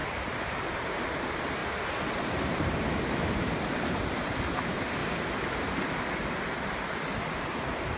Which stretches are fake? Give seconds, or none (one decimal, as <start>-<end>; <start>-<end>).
0.0-1.6; 2.3-5.0